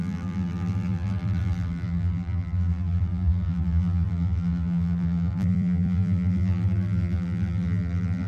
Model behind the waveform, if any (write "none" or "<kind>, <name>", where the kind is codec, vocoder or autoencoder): vocoder, BigVGAN v2